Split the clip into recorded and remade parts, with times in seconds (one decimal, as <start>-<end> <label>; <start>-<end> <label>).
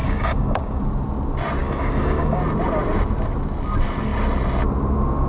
0.0-0.8 remade; 0.8-1.6 recorded; 1.6-2.4 remade; 2.4-5.3 recorded